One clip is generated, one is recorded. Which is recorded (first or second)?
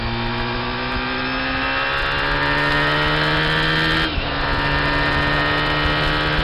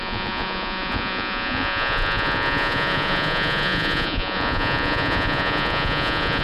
first